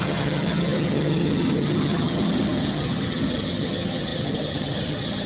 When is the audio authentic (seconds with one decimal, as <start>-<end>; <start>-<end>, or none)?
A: none